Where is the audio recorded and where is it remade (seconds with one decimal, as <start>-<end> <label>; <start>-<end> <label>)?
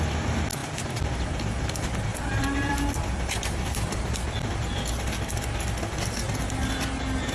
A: 0.0-2.1 recorded; 2.1-4.0 remade; 4.0-7.3 recorded